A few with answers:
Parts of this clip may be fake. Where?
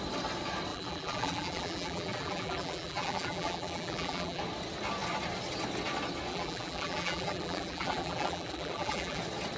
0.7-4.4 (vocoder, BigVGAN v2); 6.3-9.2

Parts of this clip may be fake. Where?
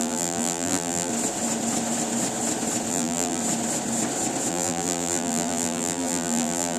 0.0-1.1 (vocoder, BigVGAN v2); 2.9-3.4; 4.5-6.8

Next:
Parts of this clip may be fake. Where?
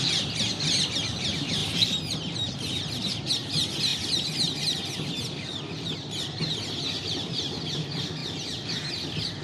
1.6-3.3 (vocoder, BigVGAN v2); 8.2-8.9